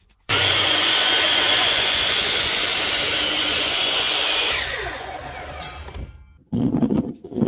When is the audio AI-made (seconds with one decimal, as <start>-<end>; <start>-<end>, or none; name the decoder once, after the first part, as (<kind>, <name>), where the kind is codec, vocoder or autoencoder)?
0.0-2.7 (vocoder, Vocos); 3.3-5.2; 6.5-7.5